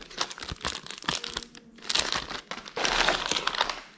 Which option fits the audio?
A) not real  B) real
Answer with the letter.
B